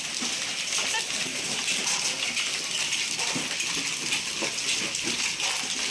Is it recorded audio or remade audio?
recorded